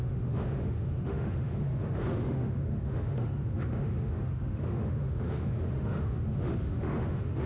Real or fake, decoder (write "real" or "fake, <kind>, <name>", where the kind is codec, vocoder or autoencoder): fake, autoencoder, DAC-VAE